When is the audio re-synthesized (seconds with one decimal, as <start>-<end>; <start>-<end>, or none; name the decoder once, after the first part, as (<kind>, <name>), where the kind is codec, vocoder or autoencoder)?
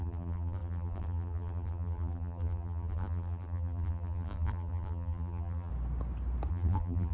0.0-5.7 (vocoder, BigVGAN v2); 6.5-7.1